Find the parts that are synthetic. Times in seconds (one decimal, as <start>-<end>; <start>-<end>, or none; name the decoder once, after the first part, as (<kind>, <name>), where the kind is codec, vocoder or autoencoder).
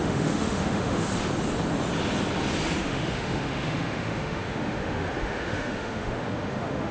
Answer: 0.0-1.1 (autoencoder, DAC-VAE); 2.8-6.9